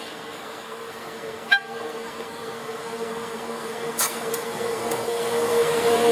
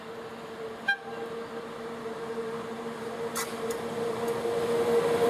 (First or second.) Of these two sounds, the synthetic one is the first